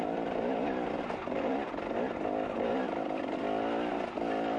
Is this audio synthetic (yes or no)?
no